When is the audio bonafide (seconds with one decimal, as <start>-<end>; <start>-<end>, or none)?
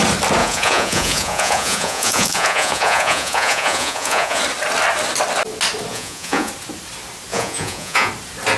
0.0-0.4; 4.4-5.9; 6.5-7.3; 8.1-8.6